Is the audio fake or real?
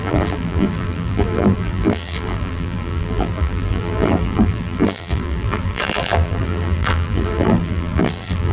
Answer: fake